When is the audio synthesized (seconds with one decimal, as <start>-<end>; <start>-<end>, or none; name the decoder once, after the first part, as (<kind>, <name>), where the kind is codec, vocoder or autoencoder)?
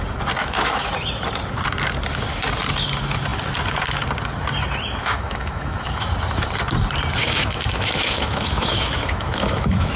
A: 0.4-0.9 (autoencoder, DAC-VAE); 5.0-6.1; 7.2-10.0